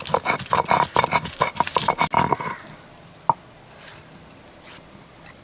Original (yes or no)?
yes